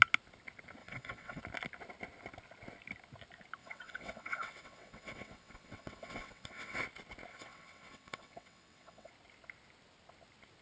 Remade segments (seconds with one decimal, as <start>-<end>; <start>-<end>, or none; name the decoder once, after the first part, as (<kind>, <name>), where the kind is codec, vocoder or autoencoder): 0.8-1.4 (vocoder, WaveNeXt); 3.6-6.8; 7.3-9.1